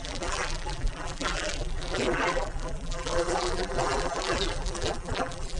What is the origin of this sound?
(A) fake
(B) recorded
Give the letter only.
A